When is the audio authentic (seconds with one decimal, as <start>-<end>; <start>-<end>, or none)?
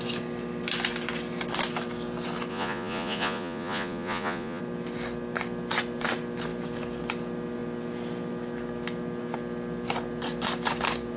0.0-2.5; 4.6-11.2